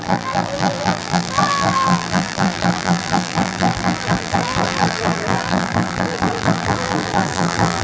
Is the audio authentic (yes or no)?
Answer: no